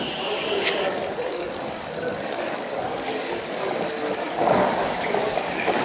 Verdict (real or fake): fake